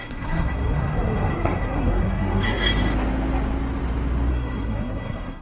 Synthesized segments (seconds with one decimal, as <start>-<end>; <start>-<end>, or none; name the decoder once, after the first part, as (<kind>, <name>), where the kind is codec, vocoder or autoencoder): 0.0-2.7 (codec, SNAC); 4.3-5.4